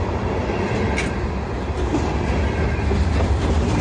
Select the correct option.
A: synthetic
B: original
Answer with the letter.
B